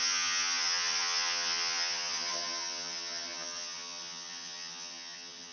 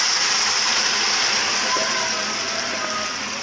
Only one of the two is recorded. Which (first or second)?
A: second